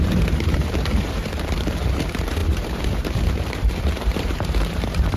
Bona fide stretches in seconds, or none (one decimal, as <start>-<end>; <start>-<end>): none